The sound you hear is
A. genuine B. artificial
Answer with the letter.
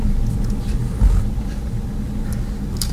A